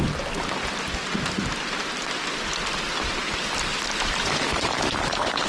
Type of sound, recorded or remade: recorded